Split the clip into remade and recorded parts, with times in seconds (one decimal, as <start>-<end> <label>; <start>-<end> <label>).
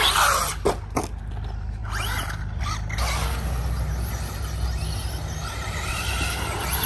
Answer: 0.0-6.9 recorded